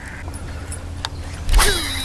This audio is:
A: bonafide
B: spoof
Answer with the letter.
A